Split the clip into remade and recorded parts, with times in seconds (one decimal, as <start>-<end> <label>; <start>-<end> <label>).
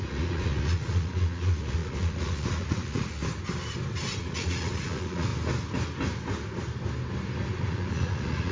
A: 0.0-3.2 remade; 3.2-4.2 recorded; 4.2-5.3 remade; 5.3-7.6 recorded; 7.6-8.5 remade